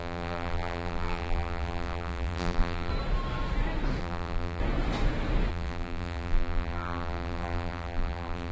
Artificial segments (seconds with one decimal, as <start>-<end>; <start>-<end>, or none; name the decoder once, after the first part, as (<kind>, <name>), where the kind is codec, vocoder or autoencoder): 0.0-2.9 (vocoder, BigVGAN v2); 4.0-4.6; 5.5-8.5

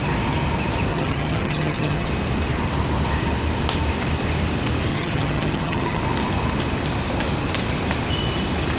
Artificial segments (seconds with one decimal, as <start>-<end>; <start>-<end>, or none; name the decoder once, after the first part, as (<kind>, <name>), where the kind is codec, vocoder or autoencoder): 0.9-2.1 (vocoder, HiFi-GAN); 4.9-6.0

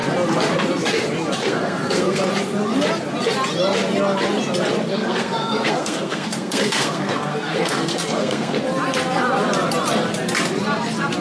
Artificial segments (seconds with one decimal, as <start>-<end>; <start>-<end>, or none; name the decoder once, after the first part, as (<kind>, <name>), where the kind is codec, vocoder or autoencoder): 1.4-2.2 (codec, SNAC); 4.9-8.6